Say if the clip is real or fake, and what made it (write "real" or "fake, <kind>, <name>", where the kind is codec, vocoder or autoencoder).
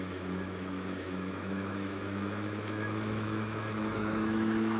fake, autoencoder, DAC-VAE